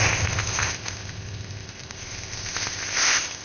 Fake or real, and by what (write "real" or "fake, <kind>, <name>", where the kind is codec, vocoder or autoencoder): fake, codec, ZipCodec